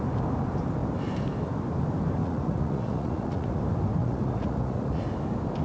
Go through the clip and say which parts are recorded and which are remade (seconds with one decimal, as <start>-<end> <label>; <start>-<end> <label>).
0.0-2.2 recorded; 2.2-3.6 remade; 3.6-4.0 recorded; 4.0-5.0 remade; 5.0-5.6 recorded